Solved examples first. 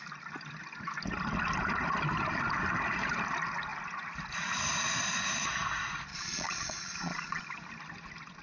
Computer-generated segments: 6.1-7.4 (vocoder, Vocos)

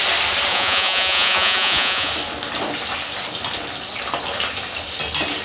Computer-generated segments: 0.5-2.1 (vocoder, Vocos)

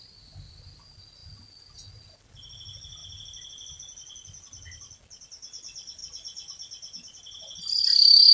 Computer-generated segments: 1.2-1.9 (vocoder, BigVGAN v2)

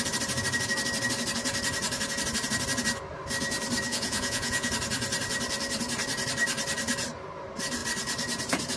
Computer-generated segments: 3.9-4.7 (vocoder, Vocos)

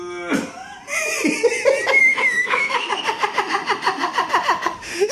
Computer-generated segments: 2.0-5.1 (autoencoder, DAC-VAE)

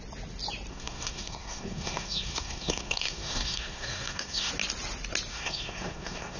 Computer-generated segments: 0.7-4.5 (codec, SNAC); 5.3-6.4

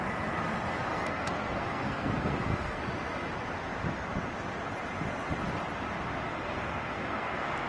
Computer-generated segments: 0.9-2.8 (codec, SNAC); 6.3-7.7